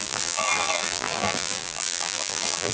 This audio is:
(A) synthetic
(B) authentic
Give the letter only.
A